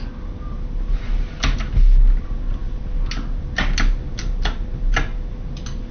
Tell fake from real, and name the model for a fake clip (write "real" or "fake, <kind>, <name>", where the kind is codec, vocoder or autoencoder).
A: real